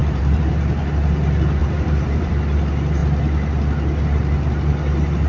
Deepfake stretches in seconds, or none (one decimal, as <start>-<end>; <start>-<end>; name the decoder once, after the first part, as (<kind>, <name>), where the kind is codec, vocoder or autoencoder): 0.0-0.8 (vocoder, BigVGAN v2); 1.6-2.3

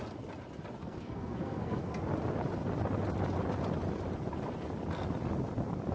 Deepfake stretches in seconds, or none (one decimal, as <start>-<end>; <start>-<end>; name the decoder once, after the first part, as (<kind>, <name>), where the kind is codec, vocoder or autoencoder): 0.8-2.0 (codec, SNAC)

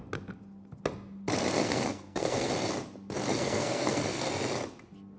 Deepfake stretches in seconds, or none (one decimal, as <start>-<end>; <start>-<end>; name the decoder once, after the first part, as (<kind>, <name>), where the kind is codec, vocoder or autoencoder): 1.6-2.5 (codec, SNAC); 3.3-4.3